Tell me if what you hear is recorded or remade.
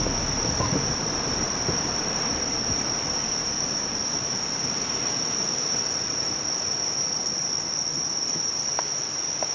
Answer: remade